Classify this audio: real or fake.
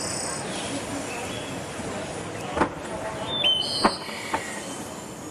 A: real